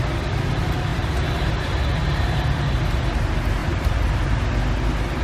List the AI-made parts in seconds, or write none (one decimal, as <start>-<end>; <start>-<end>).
0.9-2.7; 3.6-4.3